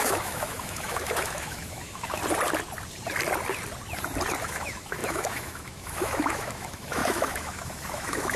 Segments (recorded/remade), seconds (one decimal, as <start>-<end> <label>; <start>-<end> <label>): 0.0-2.2 remade; 2.2-4.4 recorded; 4.4-8.4 remade